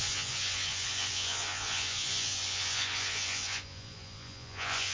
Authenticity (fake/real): fake